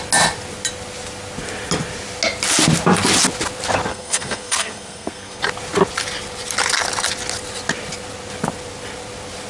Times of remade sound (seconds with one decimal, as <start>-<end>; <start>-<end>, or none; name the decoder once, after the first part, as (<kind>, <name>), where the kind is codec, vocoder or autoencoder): 3.9-5.4 (codec, SNAC)